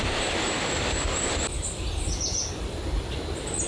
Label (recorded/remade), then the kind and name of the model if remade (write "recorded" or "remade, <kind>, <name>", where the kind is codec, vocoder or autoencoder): recorded